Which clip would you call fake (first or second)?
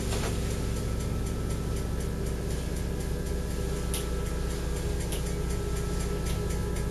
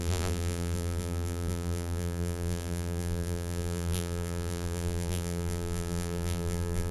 second